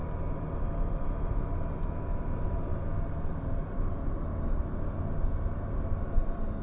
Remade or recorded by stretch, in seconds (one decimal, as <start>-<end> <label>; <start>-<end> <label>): 0.0-6.6 remade